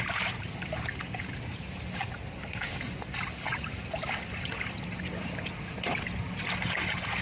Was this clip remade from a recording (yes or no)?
no